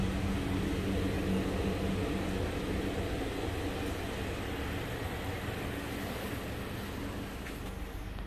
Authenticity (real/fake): real